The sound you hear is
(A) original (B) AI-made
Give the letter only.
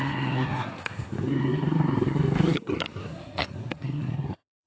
B